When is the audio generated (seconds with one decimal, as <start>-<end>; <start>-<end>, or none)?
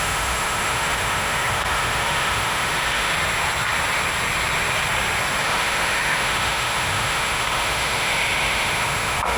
0.0-3.1; 5.4-9.4